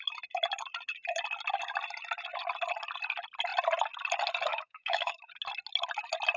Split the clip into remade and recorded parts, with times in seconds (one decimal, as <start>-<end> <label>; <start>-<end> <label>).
0.0-4.5 recorded; 4.5-5.3 remade; 5.3-6.4 recorded